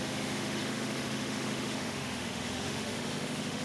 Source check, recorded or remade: remade